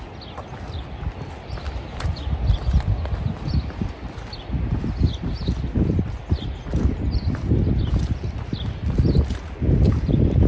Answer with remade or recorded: recorded